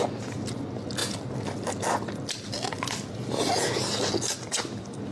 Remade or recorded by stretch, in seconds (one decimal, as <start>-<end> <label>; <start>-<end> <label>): 0.0-5.1 recorded